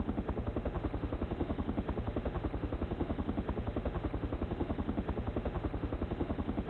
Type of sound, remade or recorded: remade